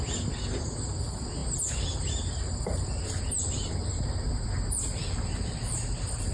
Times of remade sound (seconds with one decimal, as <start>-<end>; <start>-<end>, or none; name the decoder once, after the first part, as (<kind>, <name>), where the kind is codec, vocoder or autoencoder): none